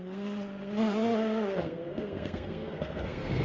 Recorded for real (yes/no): no